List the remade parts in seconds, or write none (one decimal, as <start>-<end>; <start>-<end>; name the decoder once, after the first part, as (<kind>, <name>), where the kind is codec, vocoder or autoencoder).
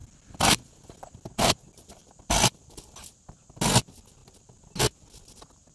0.0-1.1 (vocoder, BigVGAN v2); 2.0-3.2